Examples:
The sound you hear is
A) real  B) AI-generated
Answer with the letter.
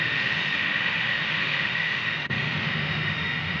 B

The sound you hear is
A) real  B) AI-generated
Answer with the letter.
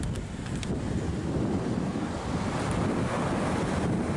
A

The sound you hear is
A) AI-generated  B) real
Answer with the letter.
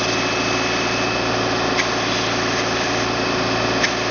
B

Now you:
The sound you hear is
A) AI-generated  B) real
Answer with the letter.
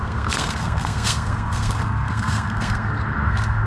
A